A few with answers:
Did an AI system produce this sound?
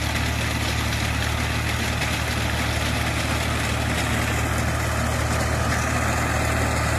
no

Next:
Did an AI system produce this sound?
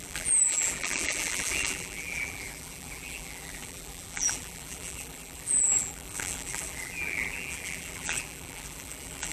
yes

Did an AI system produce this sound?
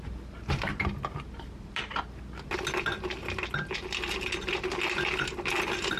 no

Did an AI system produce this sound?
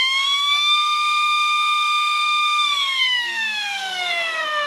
yes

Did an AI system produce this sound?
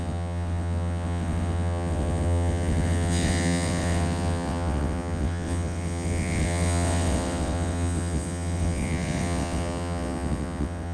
yes